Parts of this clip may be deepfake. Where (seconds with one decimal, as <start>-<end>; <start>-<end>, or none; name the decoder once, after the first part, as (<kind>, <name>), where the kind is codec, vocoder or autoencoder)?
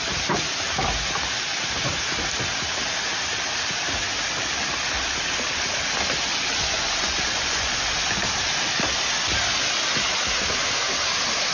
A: 6.6-7.8 (vocoder, Vocos)